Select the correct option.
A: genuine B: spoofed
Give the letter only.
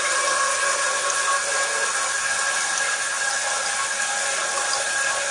A